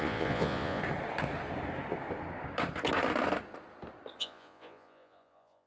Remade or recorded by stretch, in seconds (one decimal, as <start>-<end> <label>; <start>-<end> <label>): 0.0-0.8 remade; 0.8-4.2 recorded; 4.2-5.7 remade